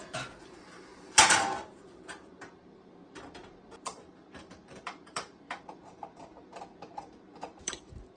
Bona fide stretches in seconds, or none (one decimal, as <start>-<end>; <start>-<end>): none